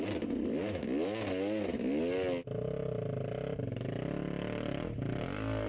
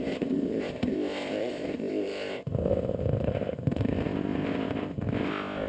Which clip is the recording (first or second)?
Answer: first